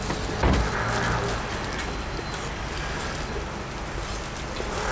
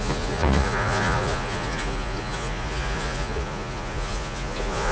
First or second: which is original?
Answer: first